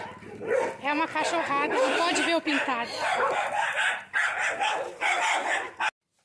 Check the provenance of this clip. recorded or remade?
recorded